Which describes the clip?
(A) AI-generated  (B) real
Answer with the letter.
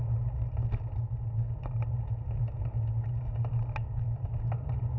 B